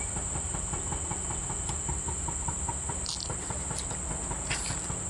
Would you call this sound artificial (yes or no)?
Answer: no